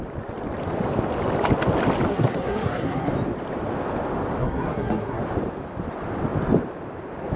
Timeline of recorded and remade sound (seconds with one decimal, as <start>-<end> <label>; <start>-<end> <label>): 0.0-2.1 recorded; 2.1-3.1 remade; 3.1-4.4 recorded; 4.4-5.2 remade; 5.2-7.4 recorded